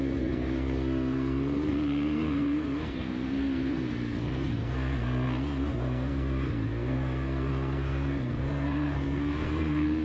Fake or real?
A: fake